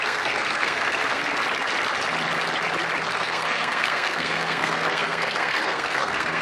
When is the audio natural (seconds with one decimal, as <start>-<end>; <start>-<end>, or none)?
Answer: 1.2-3.1